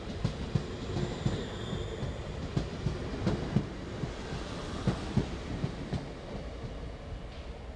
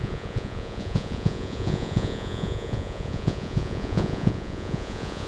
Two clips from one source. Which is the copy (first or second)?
second